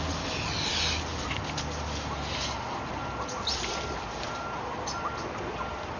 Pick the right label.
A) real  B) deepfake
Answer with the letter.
A